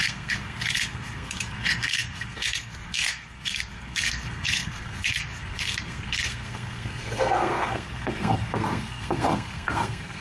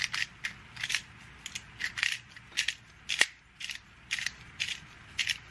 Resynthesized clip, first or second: first